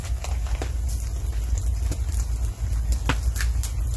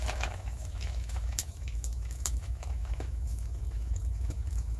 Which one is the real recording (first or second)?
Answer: first